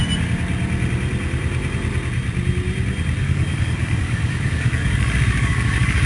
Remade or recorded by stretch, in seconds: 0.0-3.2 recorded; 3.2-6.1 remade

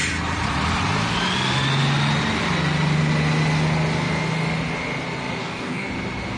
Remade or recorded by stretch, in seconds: 0.0-5.4 recorded; 5.4-5.9 remade; 5.9-6.4 recorded

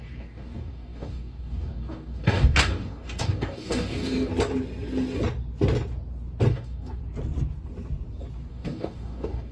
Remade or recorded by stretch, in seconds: 0.0-4.3 remade; 4.3-6.5 recorded; 6.5-7.0 remade; 7.0-8.5 recorded; 8.5-9.5 remade

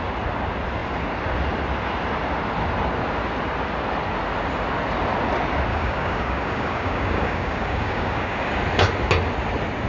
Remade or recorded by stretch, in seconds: 0.0-5.7 recorded; 5.7-8.6 remade; 8.6-9.9 recorded